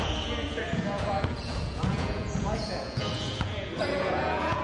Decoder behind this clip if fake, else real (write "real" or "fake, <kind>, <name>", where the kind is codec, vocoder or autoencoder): fake, vocoder, Vocos